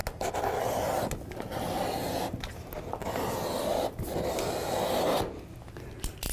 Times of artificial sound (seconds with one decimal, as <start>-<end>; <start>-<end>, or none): none